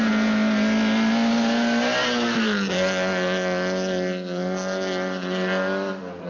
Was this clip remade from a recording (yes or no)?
no